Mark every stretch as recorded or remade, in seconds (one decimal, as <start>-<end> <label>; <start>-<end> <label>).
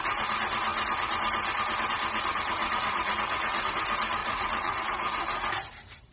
0.0-2.6 recorded; 2.6-3.7 remade; 3.7-4.2 recorded; 4.2-4.8 remade; 4.8-6.1 recorded